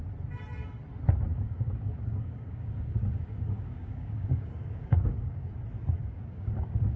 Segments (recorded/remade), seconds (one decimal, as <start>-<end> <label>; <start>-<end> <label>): 0.0-1.3 recorded; 1.3-5.5 remade; 5.5-6.0 recorded; 6.0-7.0 remade